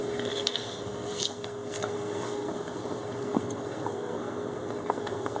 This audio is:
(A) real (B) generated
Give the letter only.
B